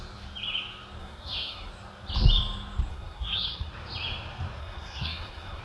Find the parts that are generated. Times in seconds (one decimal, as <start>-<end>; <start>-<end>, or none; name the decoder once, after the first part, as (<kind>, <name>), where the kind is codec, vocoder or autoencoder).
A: 1.0-1.7 (codec, SNAC); 2.9-3.7; 4.6-5.6